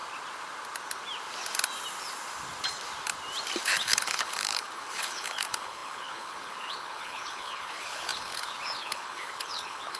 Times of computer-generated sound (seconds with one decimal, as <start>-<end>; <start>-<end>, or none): 3.6-10.0